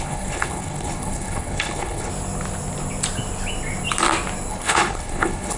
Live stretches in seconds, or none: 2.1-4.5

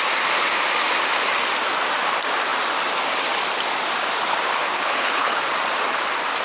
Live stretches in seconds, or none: 0.0-4.7; 5.4-6.4

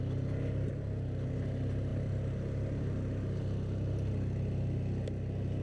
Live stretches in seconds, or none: 0.0-5.6

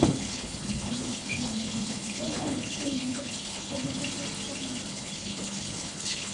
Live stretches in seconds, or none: 4.0-4.9

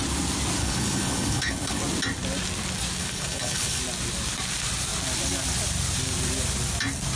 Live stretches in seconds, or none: 0.0-0.6; 1.8-3.0; 3.8-7.2

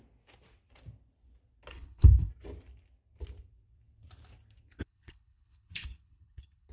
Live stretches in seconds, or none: 0.0-1.7; 2.3-4.8

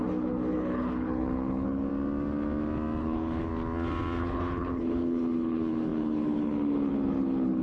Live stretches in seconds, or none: 1.9-3.0; 3.5-4.2

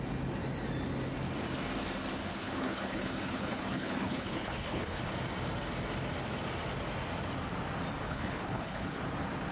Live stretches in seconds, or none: 0.0-2.2; 5.1-8.0; 9.0-9.5